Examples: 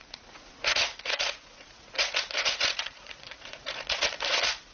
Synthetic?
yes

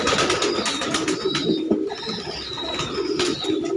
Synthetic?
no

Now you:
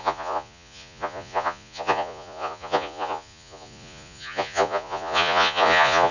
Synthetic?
yes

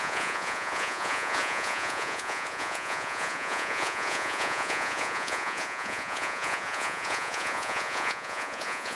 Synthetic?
yes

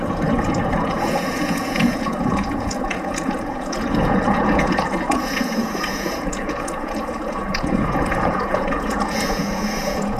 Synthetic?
yes